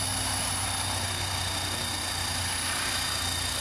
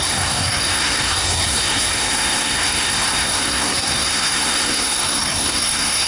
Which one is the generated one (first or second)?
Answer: second